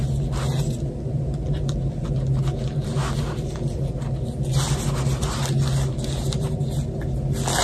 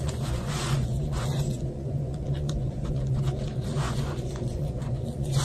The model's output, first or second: second